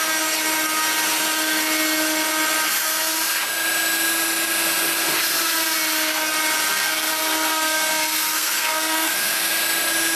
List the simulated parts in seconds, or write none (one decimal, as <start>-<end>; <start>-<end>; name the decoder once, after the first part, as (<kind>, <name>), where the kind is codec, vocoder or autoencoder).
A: 6.7-9.5 (codec, SNAC)